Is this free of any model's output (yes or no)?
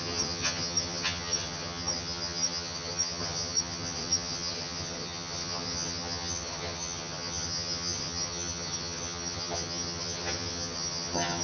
no